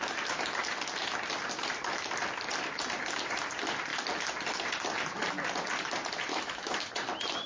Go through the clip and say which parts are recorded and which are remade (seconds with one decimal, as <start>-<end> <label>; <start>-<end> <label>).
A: 0.0-6.3 recorded; 6.3-6.9 remade; 6.9-7.5 recorded